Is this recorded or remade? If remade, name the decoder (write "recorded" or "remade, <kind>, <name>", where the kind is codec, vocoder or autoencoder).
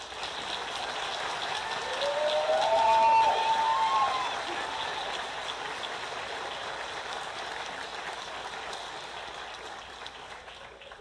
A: recorded